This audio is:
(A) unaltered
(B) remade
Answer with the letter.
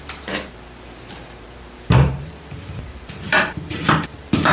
B